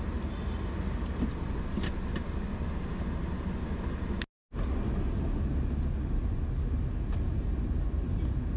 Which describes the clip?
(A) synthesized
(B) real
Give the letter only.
B